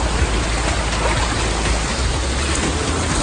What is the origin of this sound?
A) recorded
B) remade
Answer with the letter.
A